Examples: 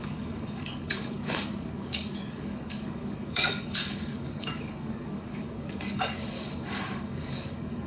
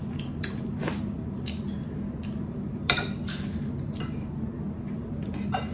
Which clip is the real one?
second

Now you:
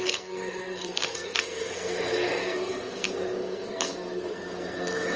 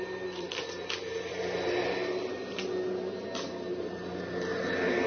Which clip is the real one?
second